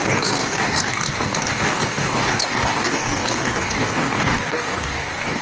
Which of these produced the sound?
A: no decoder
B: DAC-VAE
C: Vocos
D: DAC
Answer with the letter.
D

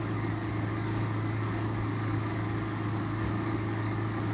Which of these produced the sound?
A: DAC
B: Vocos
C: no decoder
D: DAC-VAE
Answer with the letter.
A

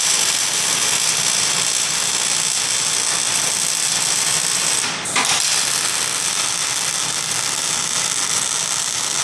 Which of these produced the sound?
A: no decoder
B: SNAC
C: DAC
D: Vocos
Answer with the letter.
A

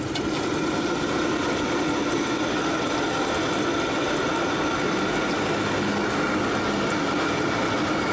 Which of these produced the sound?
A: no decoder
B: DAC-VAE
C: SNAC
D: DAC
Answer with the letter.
A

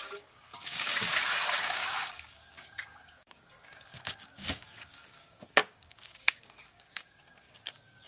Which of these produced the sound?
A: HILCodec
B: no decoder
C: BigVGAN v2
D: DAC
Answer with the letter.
D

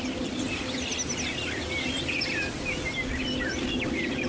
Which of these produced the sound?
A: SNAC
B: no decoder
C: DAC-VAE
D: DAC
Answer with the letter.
B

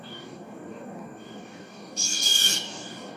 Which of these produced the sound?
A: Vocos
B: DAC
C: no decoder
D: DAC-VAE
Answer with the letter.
B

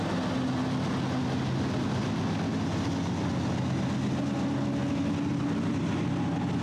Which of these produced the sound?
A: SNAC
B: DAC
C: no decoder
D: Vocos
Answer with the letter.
C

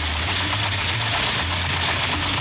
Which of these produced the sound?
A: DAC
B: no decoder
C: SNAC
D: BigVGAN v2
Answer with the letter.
B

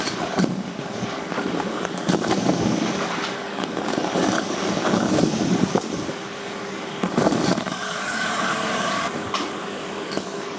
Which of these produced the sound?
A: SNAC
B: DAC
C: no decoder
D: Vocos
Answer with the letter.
B